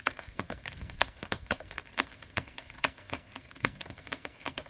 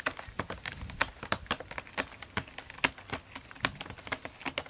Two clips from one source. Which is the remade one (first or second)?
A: first